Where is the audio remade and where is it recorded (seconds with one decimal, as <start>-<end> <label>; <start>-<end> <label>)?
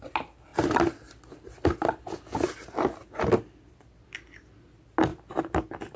0.0-6.0 recorded